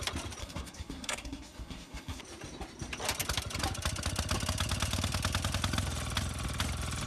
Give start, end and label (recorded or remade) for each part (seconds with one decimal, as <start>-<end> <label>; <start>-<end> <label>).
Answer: 0.0-0.4 recorded; 0.4-2.2 remade; 2.2-7.1 recorded